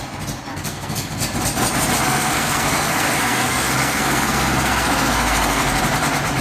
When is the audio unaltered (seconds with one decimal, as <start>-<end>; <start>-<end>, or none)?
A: 0.0-0.5; 1.2-2.0; 5.8-6.4